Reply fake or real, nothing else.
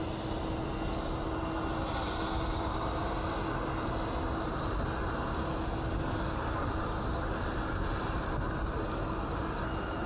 real